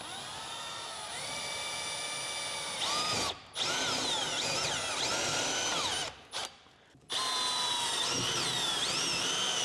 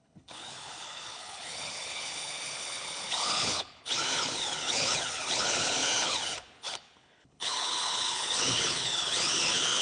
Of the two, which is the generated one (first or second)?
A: second